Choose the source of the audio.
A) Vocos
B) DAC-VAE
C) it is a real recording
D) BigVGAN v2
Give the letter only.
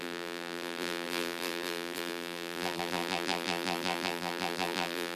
D